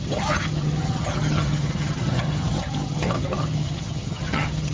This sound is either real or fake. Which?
fake